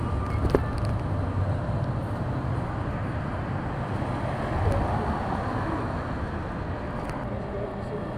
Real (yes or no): yes